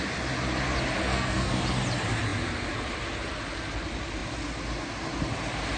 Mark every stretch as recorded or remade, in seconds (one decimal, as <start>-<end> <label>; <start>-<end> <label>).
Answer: 0.0-1.0 recorded; 1.0-1.6 remade; 1.6-5.8 recorded

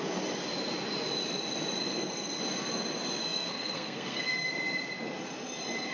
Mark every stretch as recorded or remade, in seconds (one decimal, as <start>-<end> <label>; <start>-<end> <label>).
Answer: 0.0-1.8 recorded; 1.8-2.4 remade; 2.4-3.2 recorded; 3.2-4.5 remade; 4.5-5.9 recorded

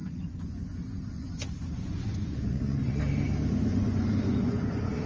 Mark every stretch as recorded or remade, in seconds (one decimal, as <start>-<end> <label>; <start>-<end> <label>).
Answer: 0.0-3.0 remade; 3.0-3.7 recorded; 3.7-5.1 remade

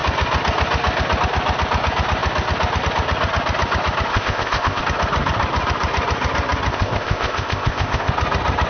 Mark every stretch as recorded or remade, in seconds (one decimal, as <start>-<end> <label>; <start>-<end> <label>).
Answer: 0.0-4.1 recorded; 4.1-4.8 remade; 4.8-6.7 recorded; 6.7-8.1 remade; 8.1-8.7 recorded

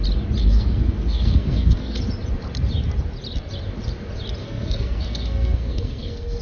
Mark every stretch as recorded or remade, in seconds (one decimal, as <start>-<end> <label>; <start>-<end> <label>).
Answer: 0.0-0.4 recorded; 0.4-2.0 remade; 2.0-4.4 recorded; 4.4-6.4 remade

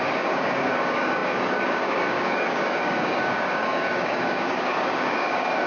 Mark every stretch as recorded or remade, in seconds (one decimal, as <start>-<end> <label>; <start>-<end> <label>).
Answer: 0.0-5.7 remade

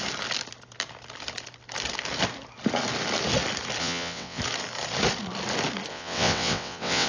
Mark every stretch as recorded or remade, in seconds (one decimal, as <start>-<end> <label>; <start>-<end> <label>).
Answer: 0.0-3.8 recorded; 3.8-4.4 remade; 4.4-5.9 recorded; 5.9-7.1 remade

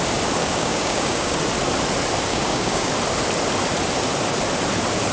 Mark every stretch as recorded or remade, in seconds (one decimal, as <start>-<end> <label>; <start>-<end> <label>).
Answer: 0.0-0.4 recorded; 0.4-1.4 remade; 1.4-2.3 recorded; 2.3-2.9 remade; 2.9-5.1 recorded